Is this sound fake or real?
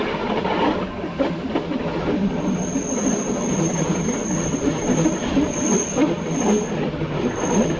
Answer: real